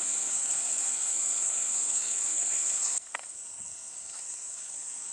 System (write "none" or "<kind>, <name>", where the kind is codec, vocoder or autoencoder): codec, SNAC